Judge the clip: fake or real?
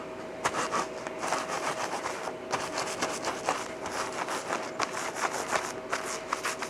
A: real